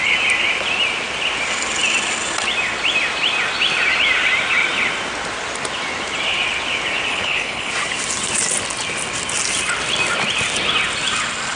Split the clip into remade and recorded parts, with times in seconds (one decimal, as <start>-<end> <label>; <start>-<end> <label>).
0.0-7.1 recorded; 7.1-7.7 remade; 7.7-11.6 recorded